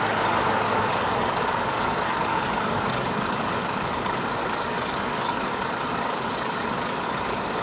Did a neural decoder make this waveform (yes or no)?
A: yes